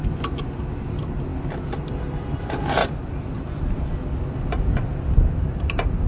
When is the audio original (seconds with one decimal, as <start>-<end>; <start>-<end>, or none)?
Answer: 0.0-6.1